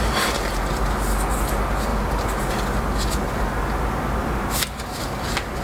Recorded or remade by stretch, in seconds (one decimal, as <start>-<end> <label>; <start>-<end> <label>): 0.0-5.6 recorded